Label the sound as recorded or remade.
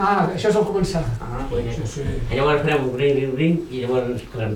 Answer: recorded